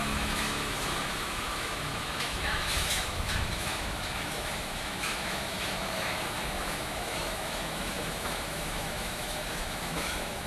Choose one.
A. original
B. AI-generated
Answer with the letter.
B